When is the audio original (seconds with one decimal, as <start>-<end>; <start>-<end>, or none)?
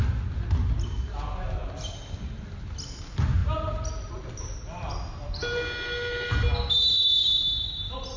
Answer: 0.0-8.2